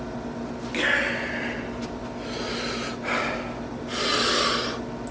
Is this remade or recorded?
recorded